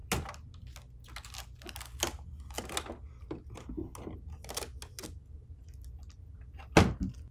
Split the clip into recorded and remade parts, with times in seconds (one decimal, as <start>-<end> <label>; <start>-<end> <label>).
0.0-7.3 recorded